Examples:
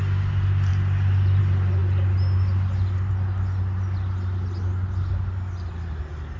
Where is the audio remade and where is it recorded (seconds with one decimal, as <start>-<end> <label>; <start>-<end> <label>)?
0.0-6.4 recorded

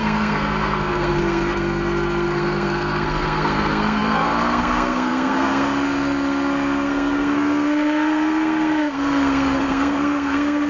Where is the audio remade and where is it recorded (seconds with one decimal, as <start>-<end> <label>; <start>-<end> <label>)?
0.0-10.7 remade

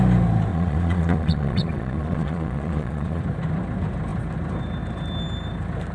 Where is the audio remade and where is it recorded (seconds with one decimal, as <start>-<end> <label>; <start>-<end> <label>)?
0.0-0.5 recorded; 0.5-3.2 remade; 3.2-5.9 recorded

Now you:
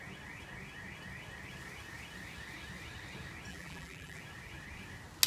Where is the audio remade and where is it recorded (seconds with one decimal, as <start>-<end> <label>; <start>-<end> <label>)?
0.0-3.5 recorded; 3.5-4.2 remade; 4.2-5.3 recorded

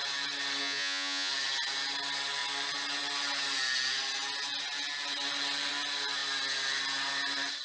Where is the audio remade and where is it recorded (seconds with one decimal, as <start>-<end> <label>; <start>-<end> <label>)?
0.0-0.6 recorded; 0.6-1.3 remade; 1.3-7.6 recorded

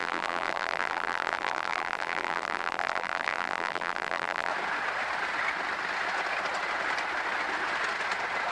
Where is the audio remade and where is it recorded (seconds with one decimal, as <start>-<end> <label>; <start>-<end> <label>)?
0.0-4.5 remade; 4.5-8.5 recorded